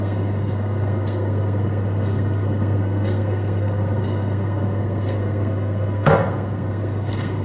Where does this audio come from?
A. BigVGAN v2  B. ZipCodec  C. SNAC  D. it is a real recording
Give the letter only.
C